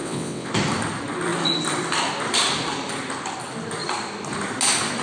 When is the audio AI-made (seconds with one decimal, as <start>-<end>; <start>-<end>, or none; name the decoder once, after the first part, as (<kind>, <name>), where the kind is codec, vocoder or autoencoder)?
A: 0.0-0.5 (vocoder, WaveNeXt)

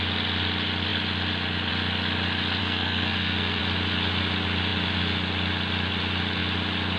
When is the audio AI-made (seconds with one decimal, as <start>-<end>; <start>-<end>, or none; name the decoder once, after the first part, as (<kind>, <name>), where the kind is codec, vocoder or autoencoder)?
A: 2.6-3.6 (codec, SNAC)

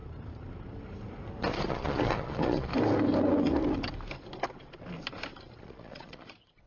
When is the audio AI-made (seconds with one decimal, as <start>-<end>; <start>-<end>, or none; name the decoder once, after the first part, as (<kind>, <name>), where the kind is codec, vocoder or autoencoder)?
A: 1.7-2.7 (vocoder, Vocos); 5.6-6.7

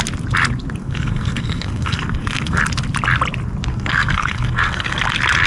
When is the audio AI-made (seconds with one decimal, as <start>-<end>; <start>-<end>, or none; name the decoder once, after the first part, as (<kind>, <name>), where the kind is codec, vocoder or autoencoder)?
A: 0.8-2.6 (codec, SNAC); 3.7-5.0

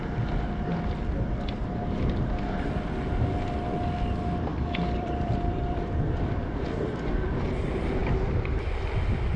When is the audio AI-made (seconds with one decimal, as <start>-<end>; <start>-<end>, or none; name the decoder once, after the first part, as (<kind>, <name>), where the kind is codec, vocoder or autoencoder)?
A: 4.5-7.1 (vocoder, BigVGAN v2)